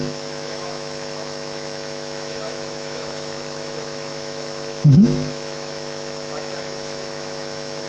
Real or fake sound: fake